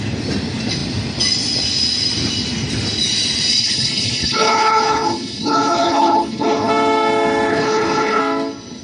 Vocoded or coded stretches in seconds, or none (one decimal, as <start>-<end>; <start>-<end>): 3.5-6.7; 7.5-8.2

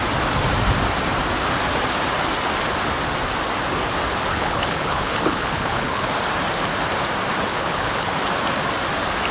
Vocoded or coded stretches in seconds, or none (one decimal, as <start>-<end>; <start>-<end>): 4.3-6.1; 7.5-8.1

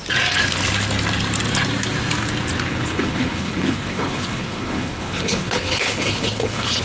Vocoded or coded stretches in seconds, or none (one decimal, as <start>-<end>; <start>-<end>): 2.7-6.8